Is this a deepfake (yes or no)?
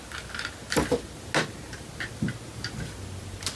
no